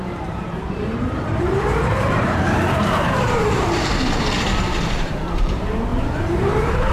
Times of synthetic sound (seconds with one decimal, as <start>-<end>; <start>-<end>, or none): 0.0-6.9